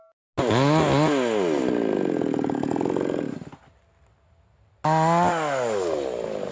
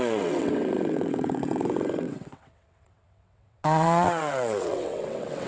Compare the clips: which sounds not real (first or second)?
second